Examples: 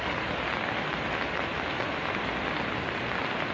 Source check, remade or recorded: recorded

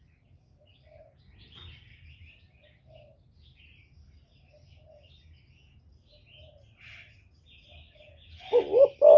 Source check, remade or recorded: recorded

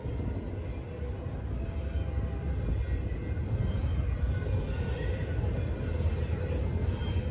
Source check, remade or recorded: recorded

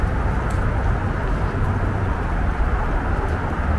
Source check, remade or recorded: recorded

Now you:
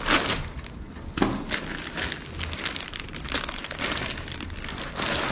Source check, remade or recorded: recorded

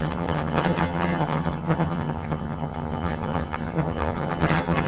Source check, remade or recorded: remade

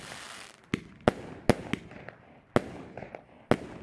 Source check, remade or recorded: recorded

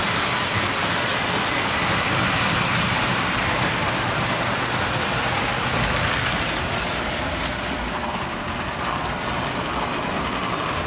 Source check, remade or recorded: recorded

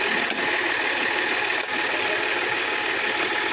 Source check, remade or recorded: recorded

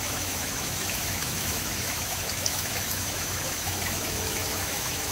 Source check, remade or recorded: remade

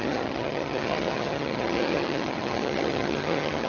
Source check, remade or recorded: remade